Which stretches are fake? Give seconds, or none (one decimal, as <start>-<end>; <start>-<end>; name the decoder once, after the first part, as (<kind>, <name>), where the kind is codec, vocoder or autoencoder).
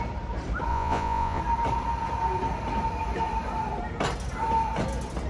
0.7-1.4 (vocoder, Vocos)